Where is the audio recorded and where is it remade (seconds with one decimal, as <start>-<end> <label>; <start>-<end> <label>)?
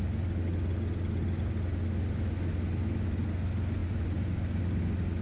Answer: 0.0-5.2 recorded